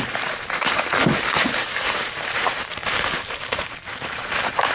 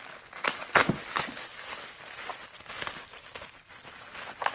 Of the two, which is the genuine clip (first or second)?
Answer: second